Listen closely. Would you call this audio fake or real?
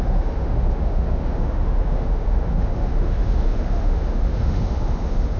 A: fake